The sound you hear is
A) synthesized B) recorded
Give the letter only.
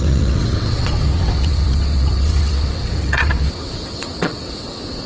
A